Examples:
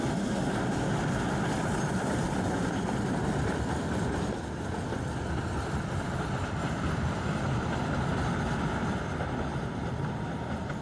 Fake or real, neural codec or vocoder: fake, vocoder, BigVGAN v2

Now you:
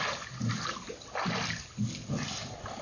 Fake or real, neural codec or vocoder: real